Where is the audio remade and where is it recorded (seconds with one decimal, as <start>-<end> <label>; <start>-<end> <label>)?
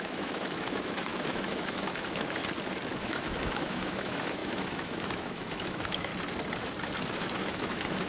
0.0-2.4 remade; 2.4-2.9 recorded; 2.9-6.1 remade; 6.1-7.5 recorded; 7.5-8.1 remade